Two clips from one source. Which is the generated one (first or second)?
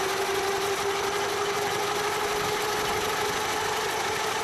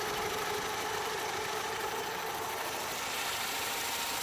second